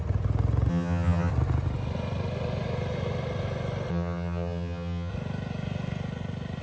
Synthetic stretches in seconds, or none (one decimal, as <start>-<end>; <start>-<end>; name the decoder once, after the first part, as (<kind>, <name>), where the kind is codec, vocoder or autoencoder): 0.7-1.3 (vocoder, HiFi-GAN); 3.9-5.1